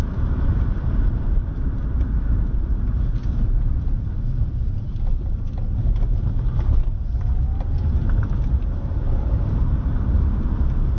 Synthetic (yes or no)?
yes